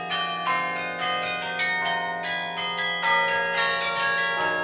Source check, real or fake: real